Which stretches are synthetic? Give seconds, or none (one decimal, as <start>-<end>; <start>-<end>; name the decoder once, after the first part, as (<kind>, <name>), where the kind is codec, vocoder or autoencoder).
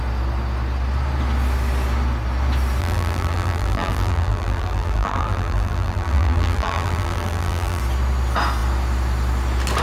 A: 2.8-7.8 (vocoder, BigVGAN v2)